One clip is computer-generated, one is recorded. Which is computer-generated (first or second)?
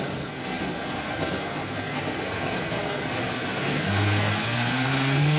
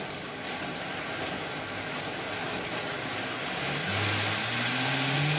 first